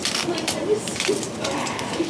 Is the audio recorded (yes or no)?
yes